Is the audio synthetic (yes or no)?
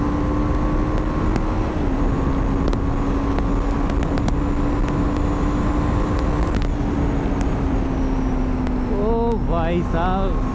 no